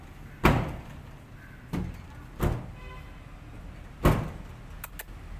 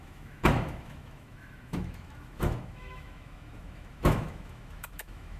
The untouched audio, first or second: first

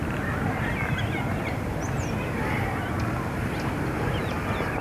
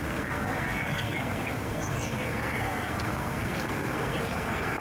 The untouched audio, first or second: first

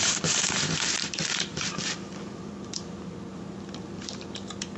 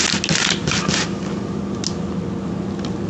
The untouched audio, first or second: second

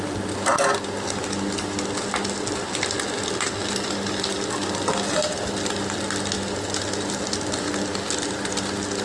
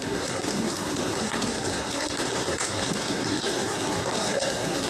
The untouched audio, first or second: first